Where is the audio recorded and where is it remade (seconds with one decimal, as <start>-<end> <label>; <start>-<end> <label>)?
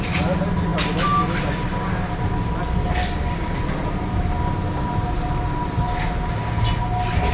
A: 0.0-3.0 recorded; 3.0-3.6 remade; 3.6-7.3 recorded